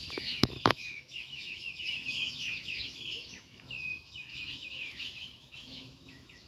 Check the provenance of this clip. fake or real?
fake